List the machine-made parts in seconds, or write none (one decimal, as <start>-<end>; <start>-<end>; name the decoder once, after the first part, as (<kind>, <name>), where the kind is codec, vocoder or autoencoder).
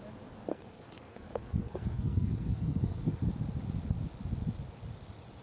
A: 0.5-3.2 (codec, SNAC)